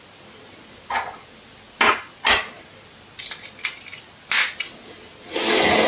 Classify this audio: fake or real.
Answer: real